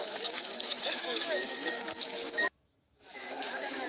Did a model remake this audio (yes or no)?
yes